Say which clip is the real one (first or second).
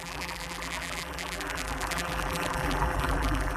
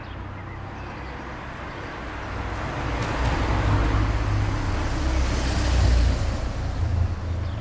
second